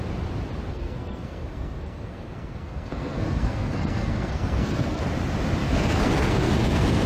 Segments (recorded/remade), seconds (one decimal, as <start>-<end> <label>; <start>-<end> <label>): 0.0-0.7 recorded; 0.7-5.0 remade; 5.0-5.6 recorded; 5.6-7.1 remade